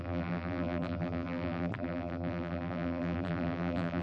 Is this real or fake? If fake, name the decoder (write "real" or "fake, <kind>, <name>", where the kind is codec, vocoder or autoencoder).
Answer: fake, vocoder, BigVGAN v2